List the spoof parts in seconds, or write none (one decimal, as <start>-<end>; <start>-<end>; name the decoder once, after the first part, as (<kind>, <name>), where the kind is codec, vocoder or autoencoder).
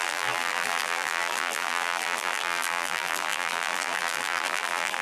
0.0-5.0 (vocoder, BigVGAN v2)